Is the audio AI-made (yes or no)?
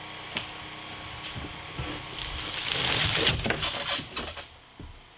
no